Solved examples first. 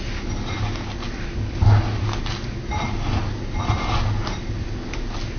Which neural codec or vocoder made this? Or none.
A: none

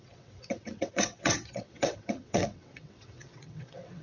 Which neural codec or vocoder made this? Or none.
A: vocoder, WaveNeXt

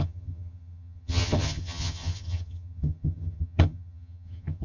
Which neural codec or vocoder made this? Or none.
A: vocoder, HiFi-GAN